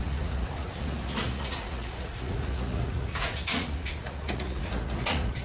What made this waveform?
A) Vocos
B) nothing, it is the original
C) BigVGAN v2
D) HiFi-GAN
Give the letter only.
A